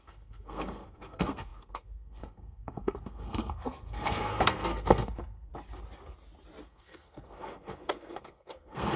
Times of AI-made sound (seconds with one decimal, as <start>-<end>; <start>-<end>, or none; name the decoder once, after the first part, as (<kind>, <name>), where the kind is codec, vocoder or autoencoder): 0.0-5.5 (codec, SNAC); 6.6-9.0